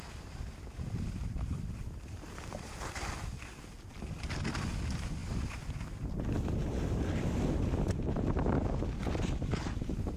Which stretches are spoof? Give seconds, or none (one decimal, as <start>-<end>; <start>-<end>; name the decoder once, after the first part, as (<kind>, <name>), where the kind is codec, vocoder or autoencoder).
1.2-2.7 (vocoder, BigVGAN v2); 3.9-4.6; 5.2-8.2; 9.0-10.2